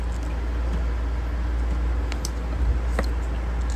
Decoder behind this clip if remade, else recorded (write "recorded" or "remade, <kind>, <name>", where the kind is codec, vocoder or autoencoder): recorded